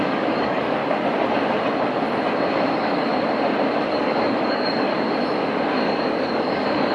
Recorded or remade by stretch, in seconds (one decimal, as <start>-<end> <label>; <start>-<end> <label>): 0.0-0.8 remade; 0.8-2.7 recorded; 2.7-3.1 remade; 3.1-3.9 recorded; 3.9-4.9 remade; 4.9-5.8 recorded; 5.8-6.9 remade